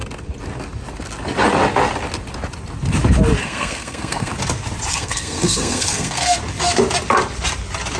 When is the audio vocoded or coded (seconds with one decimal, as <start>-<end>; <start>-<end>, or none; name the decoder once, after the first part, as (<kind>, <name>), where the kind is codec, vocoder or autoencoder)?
3.4-4.3 (codec, SNAC); 4.9-6.4